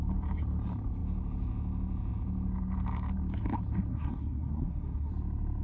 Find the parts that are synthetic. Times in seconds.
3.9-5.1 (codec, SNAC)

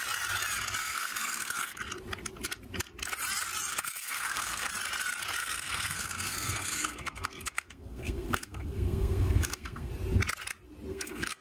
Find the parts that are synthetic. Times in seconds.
0.8-1.8 (codec, SNAC); 3.7-4.7; 5.4-9.9; 10.9-11.4

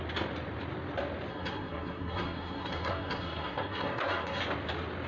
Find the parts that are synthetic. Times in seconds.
1.3-4.4 (codec, SNAC)

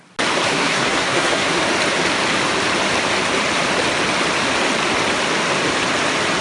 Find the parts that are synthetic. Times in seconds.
0.5-1.6 (codec, SNAC)

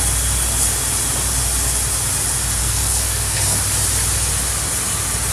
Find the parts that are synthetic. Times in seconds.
2.6-3.6 (codec, SNAC)